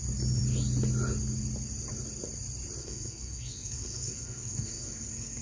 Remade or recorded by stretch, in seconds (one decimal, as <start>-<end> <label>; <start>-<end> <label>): 0.0-2.8 recorded; 2.8-5.4 remade